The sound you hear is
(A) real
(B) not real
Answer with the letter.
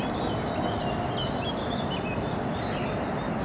A